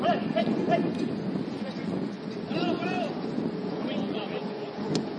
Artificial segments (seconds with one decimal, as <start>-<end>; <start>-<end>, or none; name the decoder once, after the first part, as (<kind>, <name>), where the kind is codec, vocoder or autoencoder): 0.0-0.8 (vocoder, Vocos); 1.5-5.2